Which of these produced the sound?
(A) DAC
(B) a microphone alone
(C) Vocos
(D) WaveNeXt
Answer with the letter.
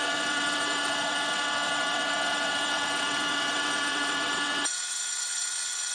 D